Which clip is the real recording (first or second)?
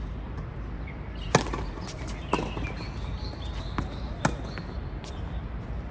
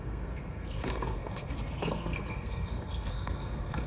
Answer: first